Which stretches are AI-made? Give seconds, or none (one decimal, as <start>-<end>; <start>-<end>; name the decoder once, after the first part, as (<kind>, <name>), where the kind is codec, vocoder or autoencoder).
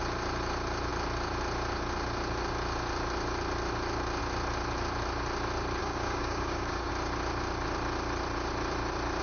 5.8-6.9 (codec, DAC)